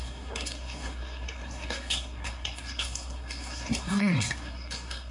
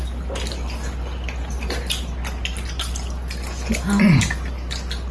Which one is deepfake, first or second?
first